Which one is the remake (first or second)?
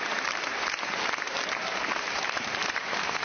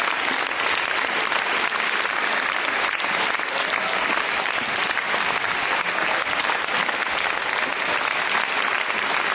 first